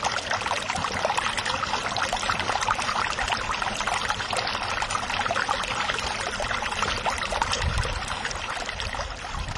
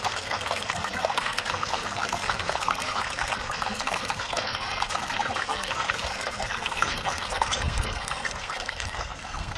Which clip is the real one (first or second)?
first